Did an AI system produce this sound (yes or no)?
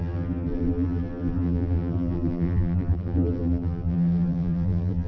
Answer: yes